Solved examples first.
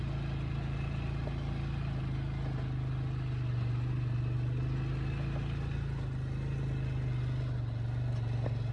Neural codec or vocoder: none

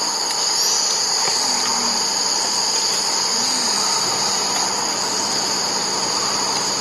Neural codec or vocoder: none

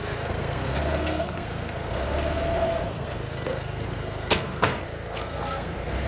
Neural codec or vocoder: codec, SNAC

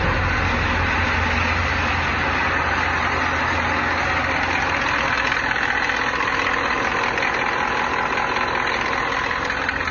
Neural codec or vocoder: none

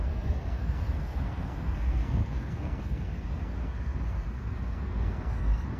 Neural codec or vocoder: codec, SNAC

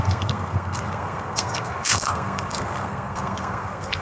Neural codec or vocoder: codec, SNAC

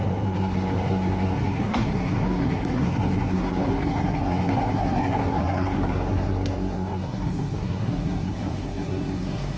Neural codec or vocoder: codec, SNAC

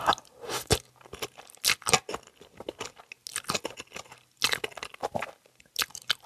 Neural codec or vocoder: none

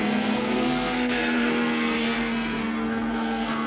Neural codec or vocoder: codec, SNAC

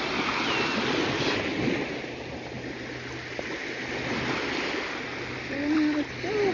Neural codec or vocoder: none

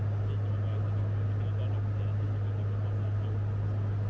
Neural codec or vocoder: none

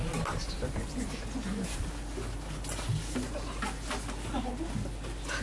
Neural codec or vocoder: none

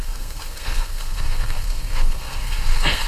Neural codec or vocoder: codec, SNAC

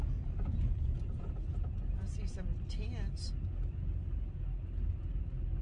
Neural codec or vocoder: none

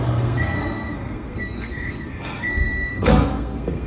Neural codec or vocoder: codec, SNAC